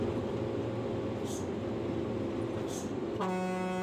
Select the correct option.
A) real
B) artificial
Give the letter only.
A